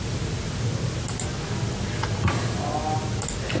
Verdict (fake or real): real